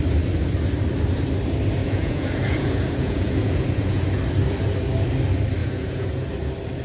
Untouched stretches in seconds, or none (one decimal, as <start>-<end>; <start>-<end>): 0.0-1.8; 4.2-5.6; 6.3-6.8